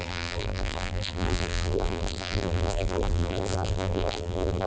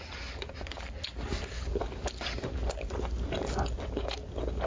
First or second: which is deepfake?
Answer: first